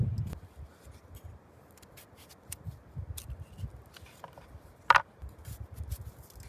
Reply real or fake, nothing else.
real